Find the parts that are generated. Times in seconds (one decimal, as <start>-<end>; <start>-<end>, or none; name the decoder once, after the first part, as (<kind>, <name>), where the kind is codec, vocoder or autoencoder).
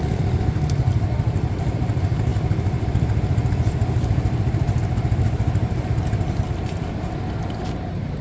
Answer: none